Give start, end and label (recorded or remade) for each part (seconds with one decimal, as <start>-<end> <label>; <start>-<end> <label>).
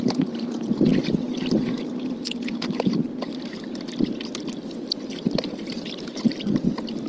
0.0-0.9 remade; 0.9-4.4 recorded; 4.4-7.1 remade